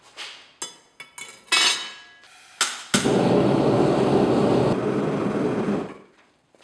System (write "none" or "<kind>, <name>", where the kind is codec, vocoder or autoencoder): none